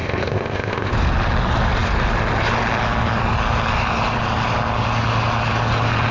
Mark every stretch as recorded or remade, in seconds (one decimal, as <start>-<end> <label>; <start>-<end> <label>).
0.0-0.9 remade; 0.9-6.1 recorded

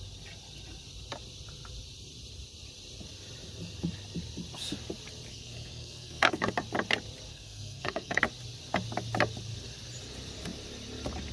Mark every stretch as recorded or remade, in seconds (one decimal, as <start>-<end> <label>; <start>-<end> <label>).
0.0-5.3 recorded; 5.3-6.5 remade; 6.5-7.3 recorded; 7.3-8.2 remade; 8.2-11.3 recorded

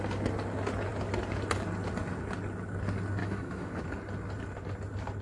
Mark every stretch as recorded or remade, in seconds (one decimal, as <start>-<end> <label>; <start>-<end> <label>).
0.0-3.2 recorded; 3.2-3.8 remade; 3.8-5.2 recorded

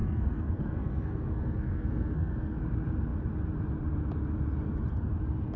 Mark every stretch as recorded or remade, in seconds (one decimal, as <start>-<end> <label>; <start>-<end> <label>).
0.0-2.6 remade; 2.6-5.6 recorded

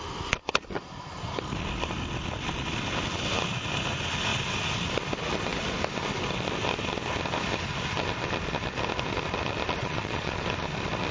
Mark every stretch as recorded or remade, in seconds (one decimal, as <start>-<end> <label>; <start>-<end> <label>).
0.0-9.8 recorded; 9.8-10.4 remade; 10.4-11.1 recorded

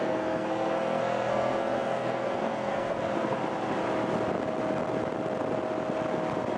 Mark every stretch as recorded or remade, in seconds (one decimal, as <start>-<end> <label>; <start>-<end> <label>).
0.0-3.4 remade; 3.4-6.6 recorded

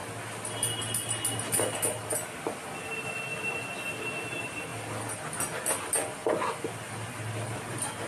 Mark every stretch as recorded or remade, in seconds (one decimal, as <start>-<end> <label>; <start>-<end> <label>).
0.0-8.1 recorded

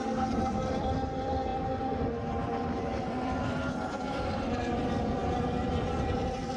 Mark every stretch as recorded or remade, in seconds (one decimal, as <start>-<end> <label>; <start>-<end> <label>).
0.0-1.5 remade; 1.5-2.3 recorded; 2.3-6.6 remade